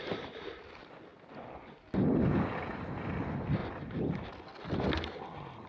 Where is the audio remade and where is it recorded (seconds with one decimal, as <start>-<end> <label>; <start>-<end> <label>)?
0.0-5.7 recorded